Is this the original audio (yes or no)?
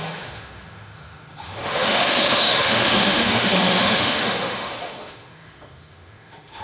no